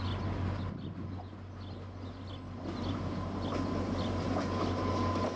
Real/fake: real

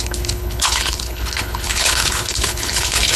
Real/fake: fake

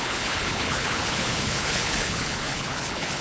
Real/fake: fake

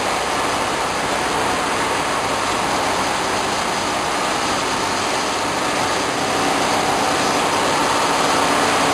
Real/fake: real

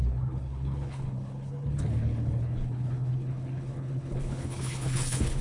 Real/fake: fake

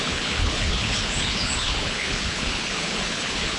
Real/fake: fake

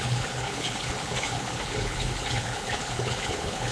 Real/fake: fake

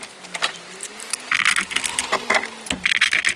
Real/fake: real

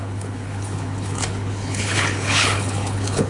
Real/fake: fake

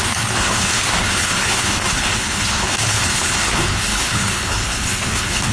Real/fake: fake